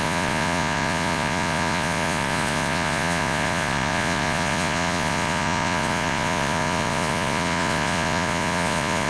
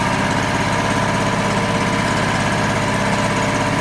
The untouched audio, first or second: second